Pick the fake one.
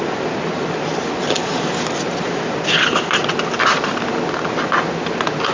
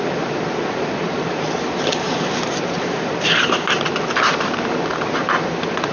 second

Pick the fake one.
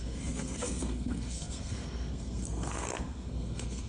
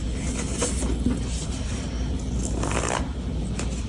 first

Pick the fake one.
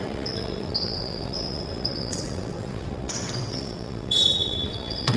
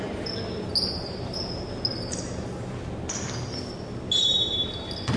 first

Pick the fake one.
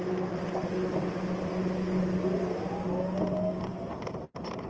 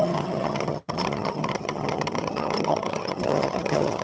second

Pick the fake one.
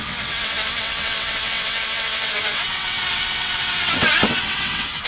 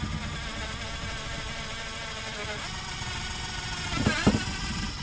first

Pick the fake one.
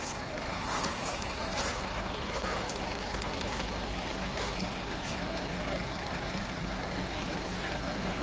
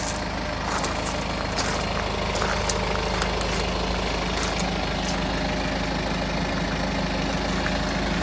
first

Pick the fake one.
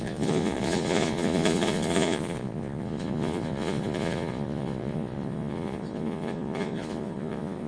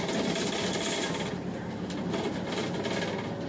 first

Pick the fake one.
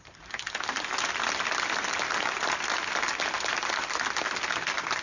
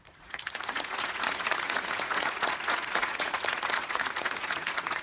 second